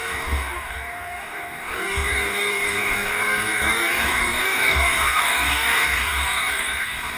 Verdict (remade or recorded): remade